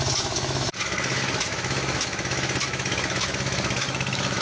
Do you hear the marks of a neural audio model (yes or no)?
yes